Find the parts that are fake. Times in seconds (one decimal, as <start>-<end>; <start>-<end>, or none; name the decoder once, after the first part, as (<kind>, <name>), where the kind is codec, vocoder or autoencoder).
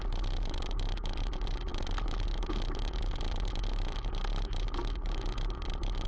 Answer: none